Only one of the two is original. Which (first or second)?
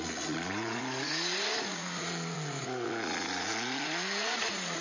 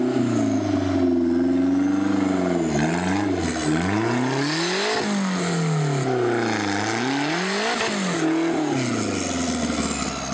second